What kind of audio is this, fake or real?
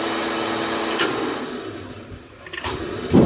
real